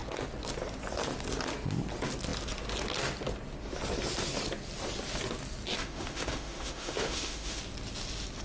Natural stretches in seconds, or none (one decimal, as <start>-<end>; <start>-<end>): 0.0-5.7; 7.6-8.4